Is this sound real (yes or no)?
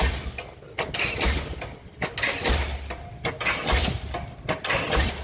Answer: yes